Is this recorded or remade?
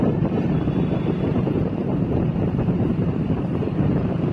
remade